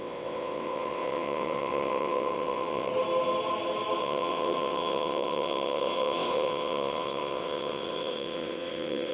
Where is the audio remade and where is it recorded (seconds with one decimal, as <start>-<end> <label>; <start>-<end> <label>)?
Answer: 0.0-2.9 remade; 2.9-4.0 recorded; 4.0-9.1 remade